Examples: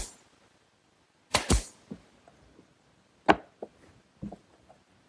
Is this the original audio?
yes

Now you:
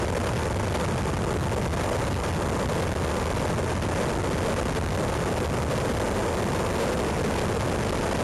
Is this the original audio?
yes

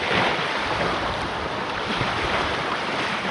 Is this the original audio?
no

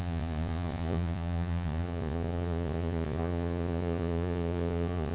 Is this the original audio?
no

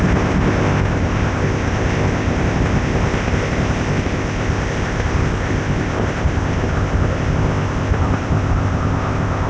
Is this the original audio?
no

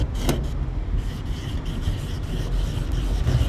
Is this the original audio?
yes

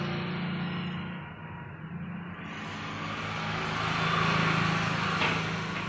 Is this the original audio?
yes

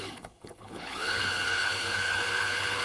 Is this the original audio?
no